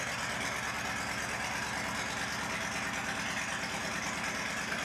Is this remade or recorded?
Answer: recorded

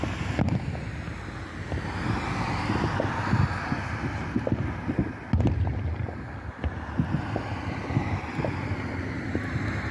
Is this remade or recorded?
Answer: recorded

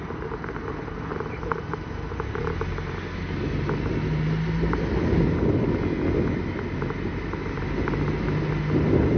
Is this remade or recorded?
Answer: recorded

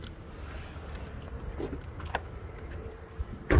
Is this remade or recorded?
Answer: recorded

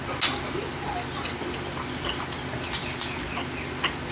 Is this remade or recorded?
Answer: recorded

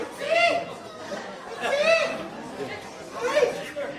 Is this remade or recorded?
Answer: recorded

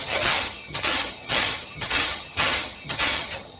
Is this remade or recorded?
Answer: remade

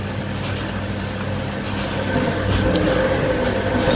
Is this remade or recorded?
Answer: recorded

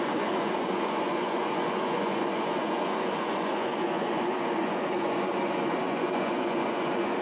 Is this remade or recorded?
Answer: remade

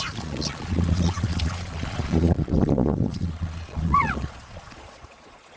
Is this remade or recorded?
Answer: remade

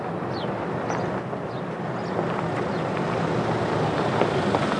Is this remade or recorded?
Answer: recorded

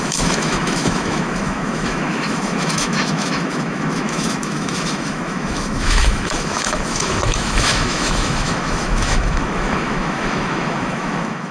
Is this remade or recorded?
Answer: remade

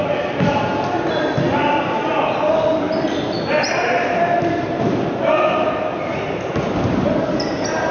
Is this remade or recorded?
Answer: recorded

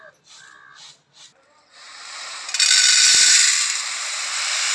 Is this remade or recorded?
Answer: recorded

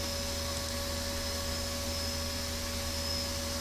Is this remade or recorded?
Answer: recorded